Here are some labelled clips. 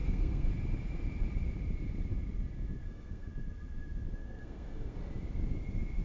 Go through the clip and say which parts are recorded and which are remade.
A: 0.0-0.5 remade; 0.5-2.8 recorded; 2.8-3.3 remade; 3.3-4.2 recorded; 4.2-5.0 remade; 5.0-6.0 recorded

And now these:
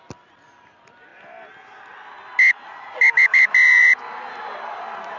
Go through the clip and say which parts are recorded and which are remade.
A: 0.0-5.2 recorded

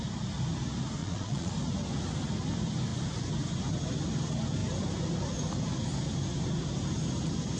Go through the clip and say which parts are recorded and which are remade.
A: 0.0-1.0 recorded; 1.0-1.5 remade; 1.5-7.6 recorded

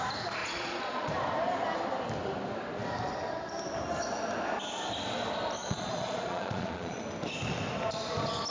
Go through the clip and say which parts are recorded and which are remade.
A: 0.0-0.4 recorded; 0.4-1.1 remade; 1.1-5.6 recorded; 5.6-7.0 remade; 7.0-8.5 recorded

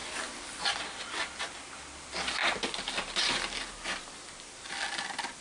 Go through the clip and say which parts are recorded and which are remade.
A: 0.0-5.4 recorded

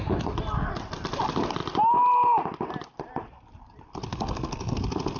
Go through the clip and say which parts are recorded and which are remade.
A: 0.0-4.1 recorded; 4.1-4.8 remade; 4.8-5.2 recorded

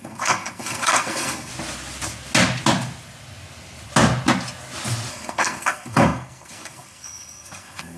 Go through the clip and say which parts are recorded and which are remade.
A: 0.0-1.5 remade; 1.5-5.1 recorded; 5.1-8.0 remade

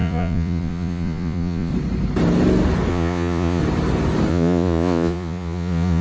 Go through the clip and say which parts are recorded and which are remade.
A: 0.0-1.7 remade; 1.7-2.9 recorded; 2.9-3.6 remade; 3.6-4.3 recorded; 4.3-6.0 remade